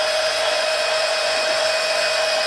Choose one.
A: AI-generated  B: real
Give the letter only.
A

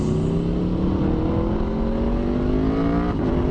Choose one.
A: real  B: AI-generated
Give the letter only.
A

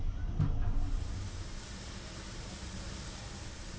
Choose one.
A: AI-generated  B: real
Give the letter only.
B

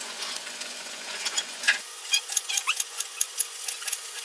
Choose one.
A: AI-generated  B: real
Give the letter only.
A